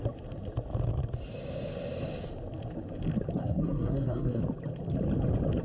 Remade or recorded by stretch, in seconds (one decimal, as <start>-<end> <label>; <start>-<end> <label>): 0.0-3.4 recorded; 3.4-4.4 remade; 4.4-5.6 recorded